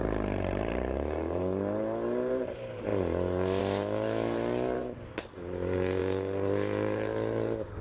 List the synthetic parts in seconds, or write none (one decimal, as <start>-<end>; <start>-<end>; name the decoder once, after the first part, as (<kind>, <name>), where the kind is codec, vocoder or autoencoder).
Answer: 0.0-7.8 (vocoder, BigVGAN v2)